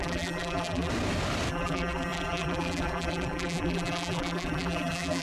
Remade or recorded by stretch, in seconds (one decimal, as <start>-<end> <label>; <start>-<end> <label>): 0.0-0.9 remade; 0.9-1.5 recorded; 1.5-5.2 remade